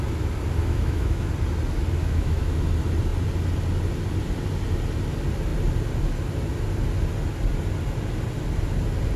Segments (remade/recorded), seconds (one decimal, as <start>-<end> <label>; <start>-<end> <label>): 0.0-0.6 recorded; 0.6-1.3 remade; 1.3-2.0 recorded; 2.0-2.6 remade; 2.6-9.2 recorded